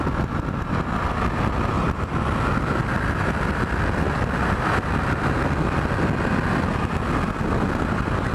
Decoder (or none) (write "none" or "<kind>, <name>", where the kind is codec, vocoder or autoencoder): none